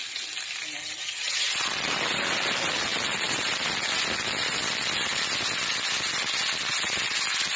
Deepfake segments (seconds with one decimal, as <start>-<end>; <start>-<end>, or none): 0.8-1.5